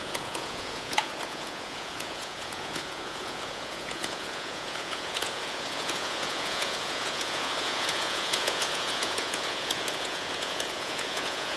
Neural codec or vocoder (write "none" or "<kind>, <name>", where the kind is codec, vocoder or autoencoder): vocoder, Vocos